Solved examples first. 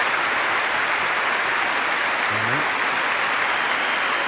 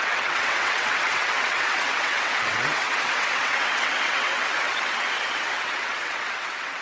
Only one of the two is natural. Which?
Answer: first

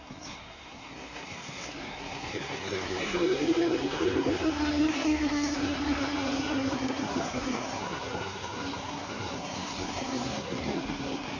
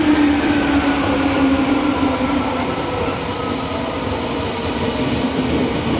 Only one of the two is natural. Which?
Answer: second